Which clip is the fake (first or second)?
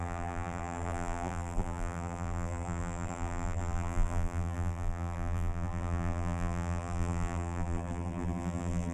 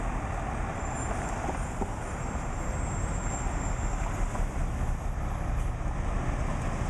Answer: first